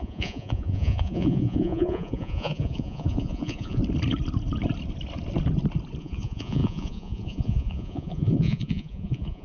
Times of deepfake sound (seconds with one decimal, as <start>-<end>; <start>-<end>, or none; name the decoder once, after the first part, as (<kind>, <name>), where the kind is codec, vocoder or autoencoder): 0.0-3.8 (vocoder, Vocos); 6.0-9.4